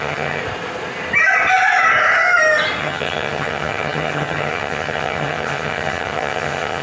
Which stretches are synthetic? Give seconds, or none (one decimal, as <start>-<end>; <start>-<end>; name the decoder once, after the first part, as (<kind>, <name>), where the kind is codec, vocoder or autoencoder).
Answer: 0.0-0.4 (vocoder, HiFi-GAN); 2.8-6.8